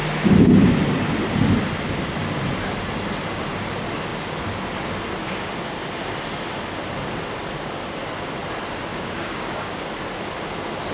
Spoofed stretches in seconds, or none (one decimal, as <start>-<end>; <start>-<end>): 8.9-9.8